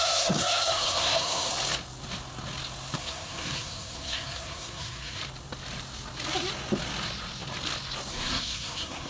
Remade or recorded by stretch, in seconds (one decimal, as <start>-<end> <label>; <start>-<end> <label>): 0.0-1.5 remade; 1.5-3.0 recorded; 3.0-5.2 remade; 5.2-8.1 recorded; 8.1-9.1 remade